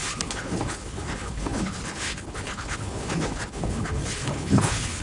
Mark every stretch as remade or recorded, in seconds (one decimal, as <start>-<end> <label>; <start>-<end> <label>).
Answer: 0.0-5.0 remade